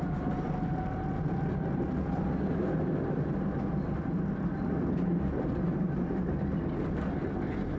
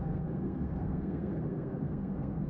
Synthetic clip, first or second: second